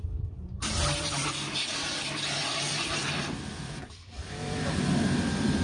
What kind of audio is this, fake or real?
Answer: fake